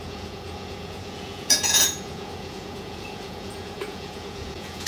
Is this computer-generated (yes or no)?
yes